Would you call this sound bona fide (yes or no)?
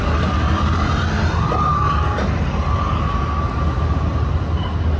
yes